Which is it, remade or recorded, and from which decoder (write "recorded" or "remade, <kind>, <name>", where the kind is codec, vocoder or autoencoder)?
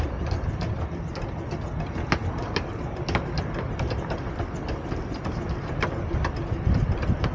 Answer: recorded